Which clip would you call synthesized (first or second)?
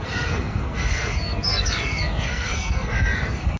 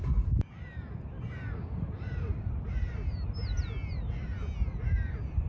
first